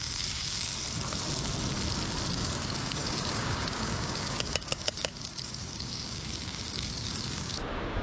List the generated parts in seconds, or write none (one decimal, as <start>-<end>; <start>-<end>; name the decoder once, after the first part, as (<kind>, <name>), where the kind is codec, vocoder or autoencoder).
0.0-0.7 (codec, DAC); 2.3-8.0